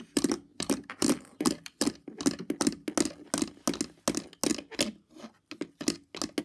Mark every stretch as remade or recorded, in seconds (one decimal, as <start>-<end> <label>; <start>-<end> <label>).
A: 0.0-6.4 recorded